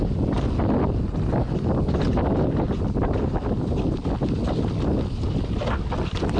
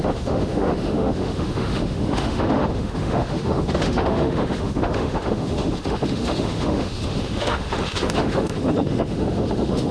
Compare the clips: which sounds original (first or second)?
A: first